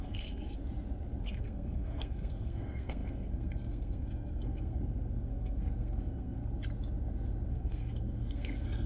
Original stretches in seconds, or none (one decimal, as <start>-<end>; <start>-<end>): 0.6-1.2; 6.4-7.5